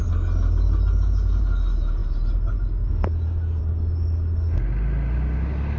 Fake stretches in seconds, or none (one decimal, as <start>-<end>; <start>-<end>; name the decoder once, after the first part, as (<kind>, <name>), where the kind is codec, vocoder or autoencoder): none